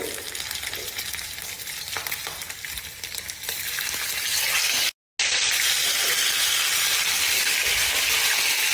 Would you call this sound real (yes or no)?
yes